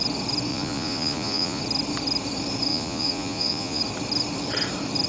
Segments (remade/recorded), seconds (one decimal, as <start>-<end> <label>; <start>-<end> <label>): 0.0-0.5 recorded; 0.5-1.6 remade; 1.6-2.7 recorded; 2.7-3.8 remade; 3.8-5.1 recorded